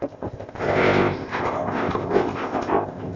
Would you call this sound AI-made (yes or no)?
yes